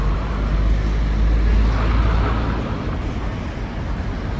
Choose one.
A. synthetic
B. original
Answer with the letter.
B